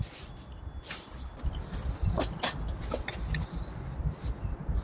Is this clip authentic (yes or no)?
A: yes